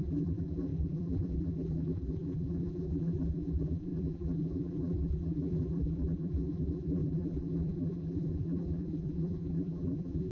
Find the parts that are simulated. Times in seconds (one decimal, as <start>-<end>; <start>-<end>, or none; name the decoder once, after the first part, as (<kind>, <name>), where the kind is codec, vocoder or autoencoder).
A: 0.0-10.3 (vocoder, BigVGAN v2)